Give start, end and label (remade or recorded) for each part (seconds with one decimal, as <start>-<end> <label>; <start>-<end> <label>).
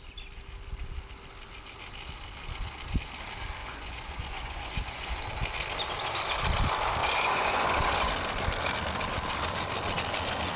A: 0.0-3.6 recorded; 3.6-5.2 remade; 5.2-7.0 recorded; 7.0-8.1 remade; 8.1-10.6 recorded